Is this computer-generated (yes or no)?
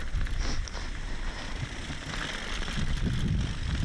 no